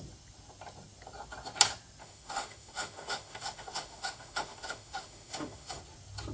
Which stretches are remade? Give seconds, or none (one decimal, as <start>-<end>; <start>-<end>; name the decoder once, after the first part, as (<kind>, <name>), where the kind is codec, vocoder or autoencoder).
2.0-5.8 (autoencoder, DAC-VAE)